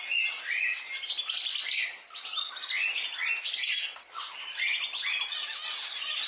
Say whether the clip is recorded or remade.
recorded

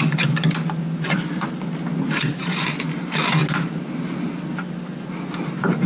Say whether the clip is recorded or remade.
recorded